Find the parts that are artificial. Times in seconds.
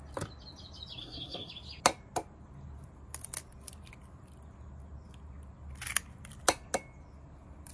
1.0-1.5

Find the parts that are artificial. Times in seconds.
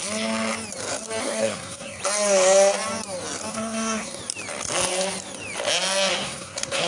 1.2-2.0; 3.5-4.2; 6.1-6.9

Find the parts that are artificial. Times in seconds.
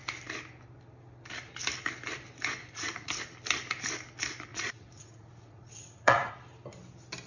2.6-3.1; 4.5-6.3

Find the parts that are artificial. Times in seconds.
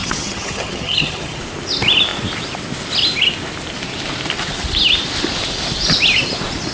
0.0-1.4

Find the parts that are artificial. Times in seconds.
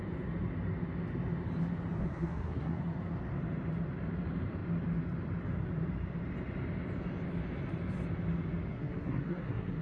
2.0-2.8; 8.7-9.8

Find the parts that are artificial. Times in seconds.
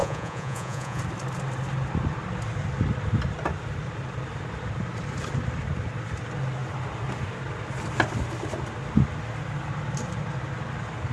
0.0-1.0